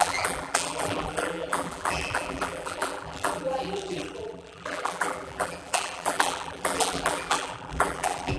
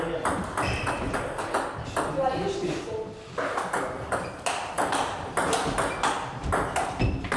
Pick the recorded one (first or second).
second